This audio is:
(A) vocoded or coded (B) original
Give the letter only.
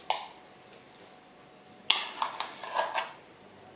B